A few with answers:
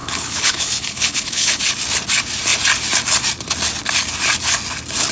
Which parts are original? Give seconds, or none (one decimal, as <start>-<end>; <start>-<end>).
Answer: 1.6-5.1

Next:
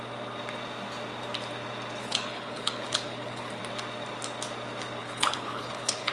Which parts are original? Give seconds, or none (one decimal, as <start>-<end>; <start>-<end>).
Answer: 0.0-2.0; 3.6-5.0

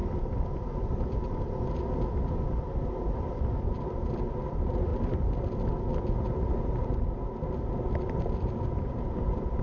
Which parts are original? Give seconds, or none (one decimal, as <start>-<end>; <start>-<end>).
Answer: 0.0-9.6

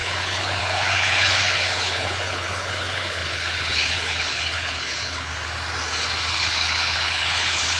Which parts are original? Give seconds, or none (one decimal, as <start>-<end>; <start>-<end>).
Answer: 5.3-6.3